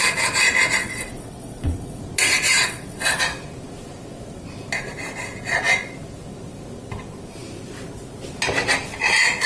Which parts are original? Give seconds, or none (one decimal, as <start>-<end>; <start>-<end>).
0.0-0.8; 2.0-2.5; 3.2-9.5